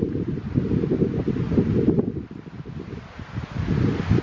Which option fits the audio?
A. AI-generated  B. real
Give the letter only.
B